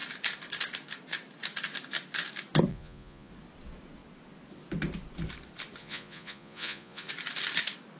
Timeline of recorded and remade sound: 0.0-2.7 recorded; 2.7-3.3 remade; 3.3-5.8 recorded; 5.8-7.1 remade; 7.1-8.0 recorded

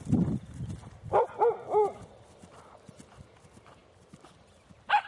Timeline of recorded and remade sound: 0.0-5.1 recorded

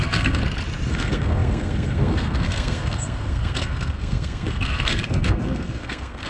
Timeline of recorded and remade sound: 0.0-0.4 remade; 0.4-0.9 recorded; 0.9-6.3 remade

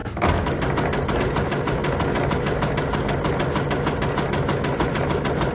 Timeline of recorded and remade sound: 0.0-5.5 recorded